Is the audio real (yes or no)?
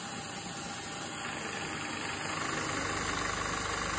yes